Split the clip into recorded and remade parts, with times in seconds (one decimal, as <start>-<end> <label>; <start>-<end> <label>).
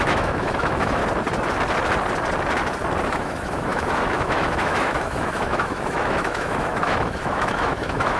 0.0-1.0 remade; 1.0-3.0 recorded; 3.0-8.2 remade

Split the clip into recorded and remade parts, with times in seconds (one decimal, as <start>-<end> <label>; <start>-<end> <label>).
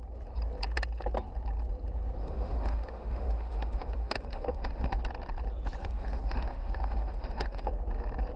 0.0-2.2 recorded; 2.2-5.0 remade; 5.0-5.8 recorded; 5.8-7.7 remade; 7.7-8.4 recorded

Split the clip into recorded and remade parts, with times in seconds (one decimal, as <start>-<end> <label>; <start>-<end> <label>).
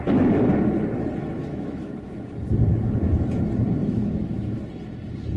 0.0-1.2 recorded; 1.2-2.2 remade; 2.2-2.7 recorded; 2.7-3.4 remade; 3.4-3.8 recorded; 3.8-4.6 remade; 4.6-5.4 recorded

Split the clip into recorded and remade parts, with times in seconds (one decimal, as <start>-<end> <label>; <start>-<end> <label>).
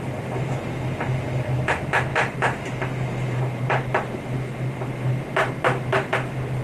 0.0-6.6 recorded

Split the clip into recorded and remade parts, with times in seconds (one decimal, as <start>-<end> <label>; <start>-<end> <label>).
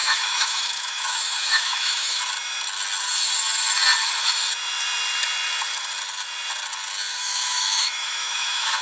0.0-2.2 remade; 2.2-7.1 recorded; 7.1-8.8 remade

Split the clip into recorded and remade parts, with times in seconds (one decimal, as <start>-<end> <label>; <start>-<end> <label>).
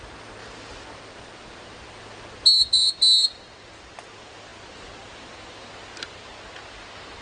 0.0-7.2 recorded